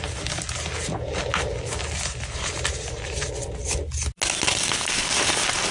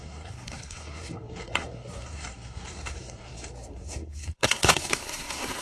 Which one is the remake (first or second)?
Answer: second